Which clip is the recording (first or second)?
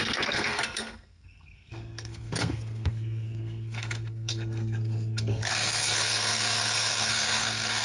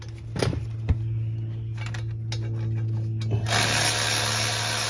second